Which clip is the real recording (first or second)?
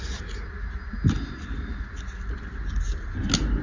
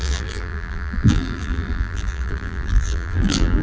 first